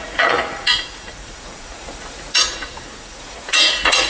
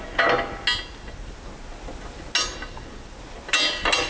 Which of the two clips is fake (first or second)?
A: first